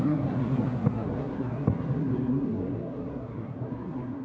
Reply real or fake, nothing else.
fake